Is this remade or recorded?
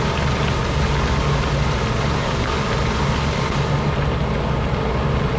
recorded